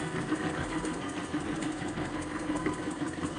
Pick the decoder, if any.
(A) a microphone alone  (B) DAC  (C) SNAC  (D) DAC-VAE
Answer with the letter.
C